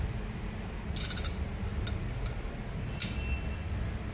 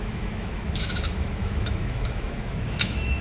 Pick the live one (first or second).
first